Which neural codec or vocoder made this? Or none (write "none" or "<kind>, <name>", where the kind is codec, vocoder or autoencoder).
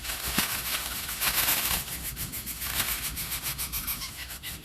autoencoder, DAC-VAE